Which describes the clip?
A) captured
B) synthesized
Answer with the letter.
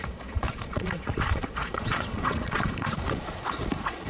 B